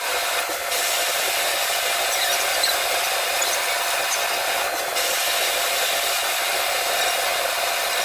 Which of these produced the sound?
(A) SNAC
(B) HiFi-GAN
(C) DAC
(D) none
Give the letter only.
D